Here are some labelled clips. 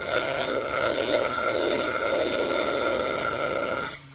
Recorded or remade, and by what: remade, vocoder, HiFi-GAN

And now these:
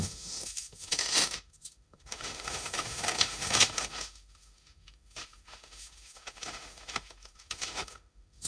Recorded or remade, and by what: remade, autoencoder, DAC-VAE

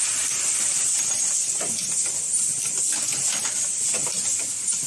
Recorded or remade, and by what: recorded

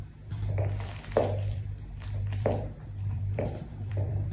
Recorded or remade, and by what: remade, vocoder, BigVGAN v2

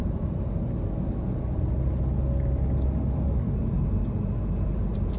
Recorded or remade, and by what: recorded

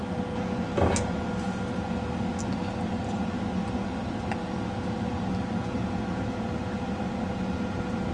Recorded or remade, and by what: recorded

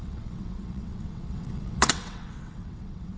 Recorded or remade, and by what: remade, vocoder, WaveNeXt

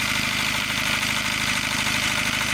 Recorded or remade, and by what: remade, vocoder, BigVGAN v2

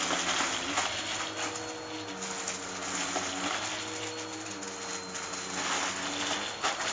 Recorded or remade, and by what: recorded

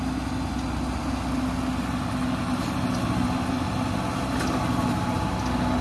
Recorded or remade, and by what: recorded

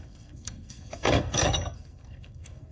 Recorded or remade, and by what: remade, codec, SNAC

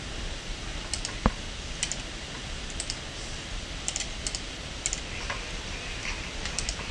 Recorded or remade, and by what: recorded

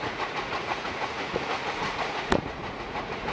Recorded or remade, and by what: remade, vocoder, Vocos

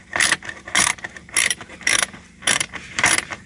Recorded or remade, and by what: remade, vocoder, BigVGAN v2